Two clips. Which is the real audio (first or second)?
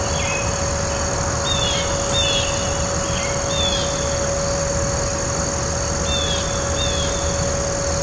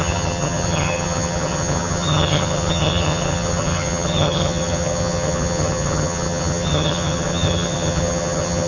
first